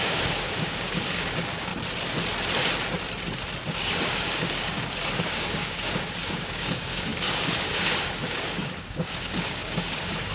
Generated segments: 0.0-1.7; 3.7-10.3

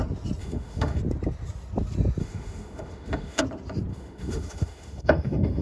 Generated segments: 0.4-1.0; 2.2-3.4; 3.9-5.6

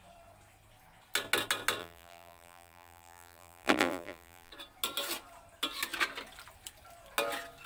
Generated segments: 1.8-4.5

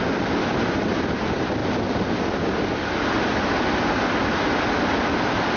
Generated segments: none

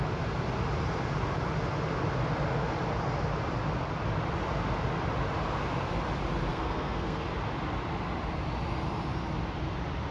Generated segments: 6.5-7.2

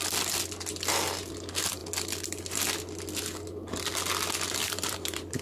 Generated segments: 4.6-5.4